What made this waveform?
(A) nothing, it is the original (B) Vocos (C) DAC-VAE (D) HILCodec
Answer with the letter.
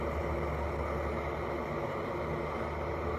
A